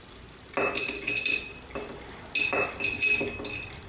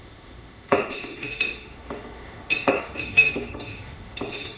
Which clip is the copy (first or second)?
second